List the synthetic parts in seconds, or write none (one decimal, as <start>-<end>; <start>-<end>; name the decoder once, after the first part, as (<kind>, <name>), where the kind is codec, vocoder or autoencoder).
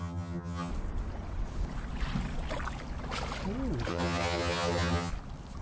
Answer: 0.0-0.7 (vocoder, HiFi-GAN); 3.9-5.1